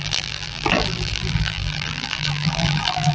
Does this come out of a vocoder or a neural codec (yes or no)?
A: yes